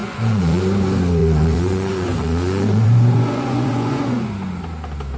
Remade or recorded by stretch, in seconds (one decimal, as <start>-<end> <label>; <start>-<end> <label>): 0.0-0.6 remade; 0.6-1.2 recorded; 1.2-4.3 remade; 4.3-5.2 recorded